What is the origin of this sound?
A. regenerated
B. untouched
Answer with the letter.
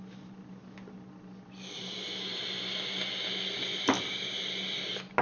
B